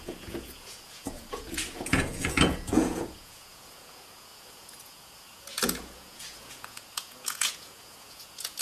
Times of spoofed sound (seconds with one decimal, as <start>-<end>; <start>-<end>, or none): 0.0-8.6